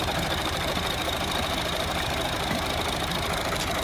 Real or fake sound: fake